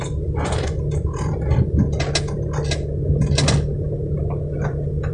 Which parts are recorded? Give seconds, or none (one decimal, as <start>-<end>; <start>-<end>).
1.8-4.5